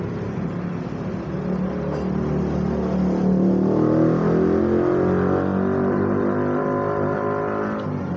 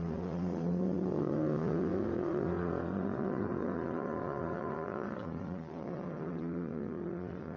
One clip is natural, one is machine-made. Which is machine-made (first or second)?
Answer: second